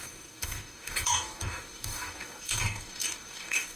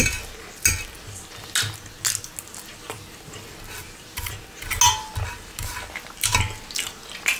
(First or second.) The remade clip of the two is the first